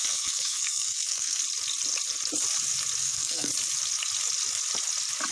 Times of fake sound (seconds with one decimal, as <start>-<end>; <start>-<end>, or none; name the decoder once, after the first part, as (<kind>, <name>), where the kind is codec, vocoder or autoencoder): 0.0-1.4 (codec, SNAC); 3.0-3.5